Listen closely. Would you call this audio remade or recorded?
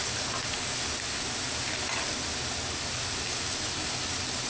recorded